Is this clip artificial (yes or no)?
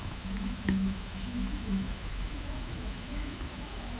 yes